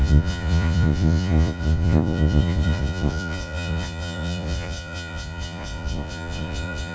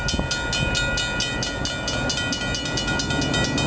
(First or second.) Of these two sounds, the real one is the second